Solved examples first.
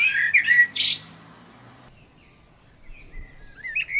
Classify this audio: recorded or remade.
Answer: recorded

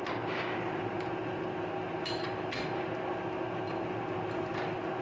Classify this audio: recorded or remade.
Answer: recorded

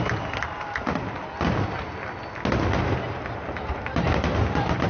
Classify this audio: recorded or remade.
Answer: recorded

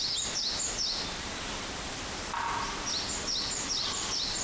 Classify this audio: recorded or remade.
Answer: recorded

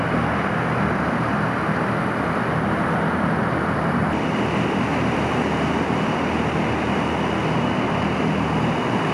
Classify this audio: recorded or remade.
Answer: recorded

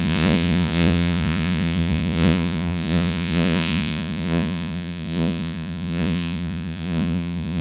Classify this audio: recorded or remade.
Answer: remade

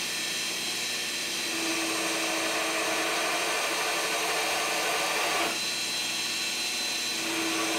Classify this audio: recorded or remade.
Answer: recorded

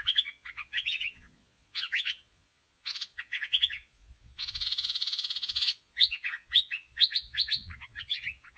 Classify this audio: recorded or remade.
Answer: remade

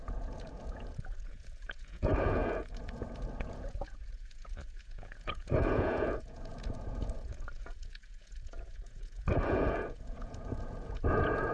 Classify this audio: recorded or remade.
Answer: remade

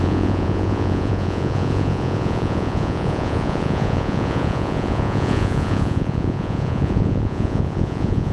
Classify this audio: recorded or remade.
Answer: remade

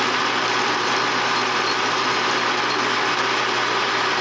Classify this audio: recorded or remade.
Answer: recorded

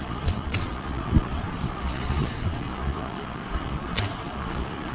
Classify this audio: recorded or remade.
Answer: remade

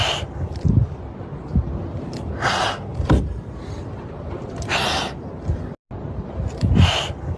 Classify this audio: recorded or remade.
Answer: recorded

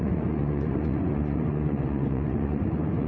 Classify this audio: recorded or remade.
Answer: remade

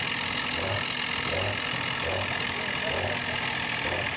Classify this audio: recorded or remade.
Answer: recorded